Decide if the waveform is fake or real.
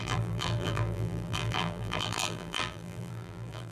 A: fake